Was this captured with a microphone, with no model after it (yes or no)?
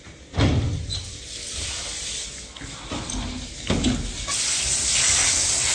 yes